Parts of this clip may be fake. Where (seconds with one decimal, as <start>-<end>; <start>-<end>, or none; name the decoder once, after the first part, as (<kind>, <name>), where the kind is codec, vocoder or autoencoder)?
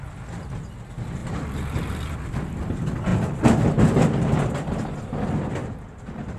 none